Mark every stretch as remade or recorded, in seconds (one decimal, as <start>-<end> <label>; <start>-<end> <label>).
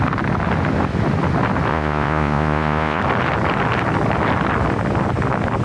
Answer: 0.0-1.7 recorded; 1.7-3.0 remade; 3.0-5.6 recorded